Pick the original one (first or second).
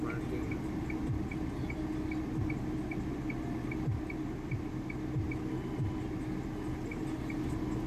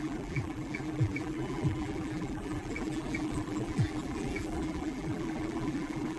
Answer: first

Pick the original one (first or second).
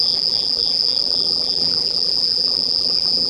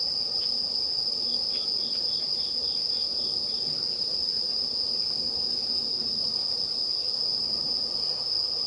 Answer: second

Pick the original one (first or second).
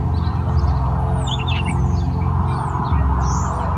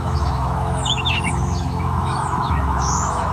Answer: first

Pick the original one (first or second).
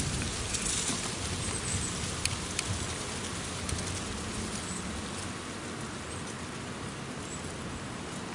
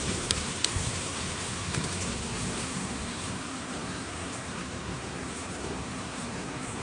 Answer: first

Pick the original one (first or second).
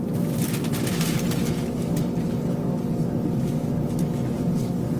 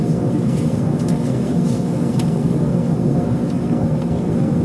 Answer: first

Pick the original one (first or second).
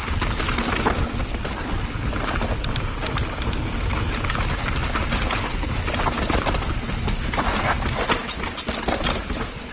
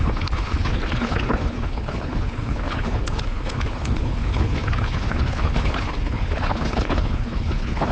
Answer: first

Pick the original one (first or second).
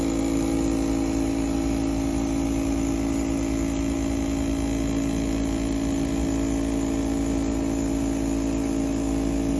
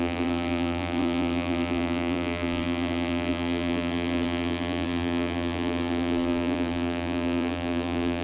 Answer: first